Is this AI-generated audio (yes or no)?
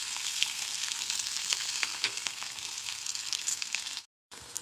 yes